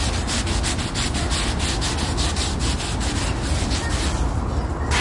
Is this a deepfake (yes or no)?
no